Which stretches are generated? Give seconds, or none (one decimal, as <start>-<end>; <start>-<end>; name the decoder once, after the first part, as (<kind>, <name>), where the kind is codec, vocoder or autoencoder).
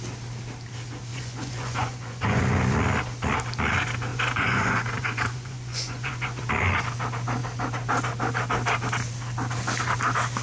1.1-2.4 (vocoder, Vocos); 4.1-6.4